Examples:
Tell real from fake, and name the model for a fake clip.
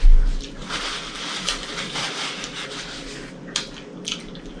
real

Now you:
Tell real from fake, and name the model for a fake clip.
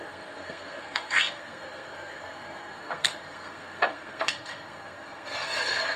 fake, codec, SNAC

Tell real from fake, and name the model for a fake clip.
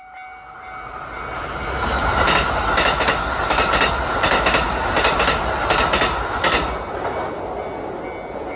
real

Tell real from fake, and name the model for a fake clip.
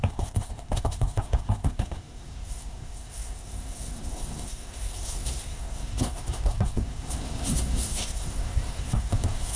fake, codec, SNAC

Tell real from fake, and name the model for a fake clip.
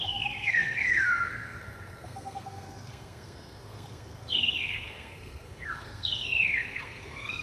fake, codec, SNAC